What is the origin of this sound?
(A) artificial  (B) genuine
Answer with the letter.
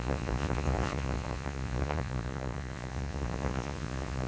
A